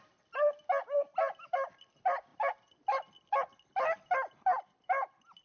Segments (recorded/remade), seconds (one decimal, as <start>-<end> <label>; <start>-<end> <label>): 0.0-5.4 recorded